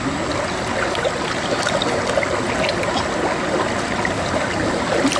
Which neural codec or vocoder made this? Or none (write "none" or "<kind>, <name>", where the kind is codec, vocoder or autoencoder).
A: none